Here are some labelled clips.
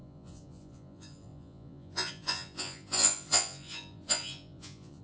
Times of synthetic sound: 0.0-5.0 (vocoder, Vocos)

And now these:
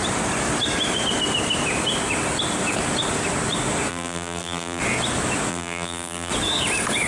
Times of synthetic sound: 3.9-4.8 (vocoder, BigVGAN v2); 5.5-6.3

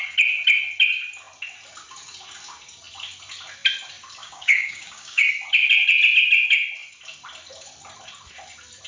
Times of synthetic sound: 4.2-5.3 (codec, DAC)

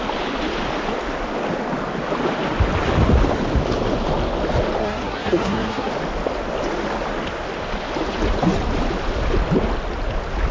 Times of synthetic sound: 4.8-5.9 (codec, SNAC)

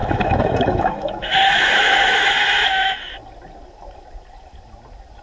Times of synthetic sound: 0.0-3.1 (autoencoder, DAC-VAE)

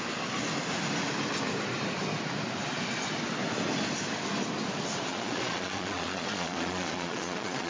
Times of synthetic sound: 5.1-7.7 (vocoder, Vocos)